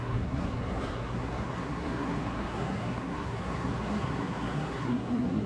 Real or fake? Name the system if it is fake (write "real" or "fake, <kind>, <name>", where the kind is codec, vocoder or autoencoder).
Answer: fake, codec, SNAC